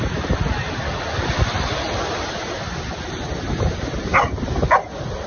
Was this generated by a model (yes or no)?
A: no